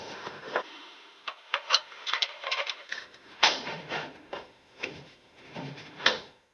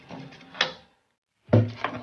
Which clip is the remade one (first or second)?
first